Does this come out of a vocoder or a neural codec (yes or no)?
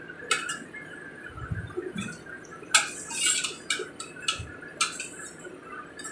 no